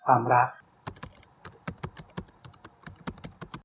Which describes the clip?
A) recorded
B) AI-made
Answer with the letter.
A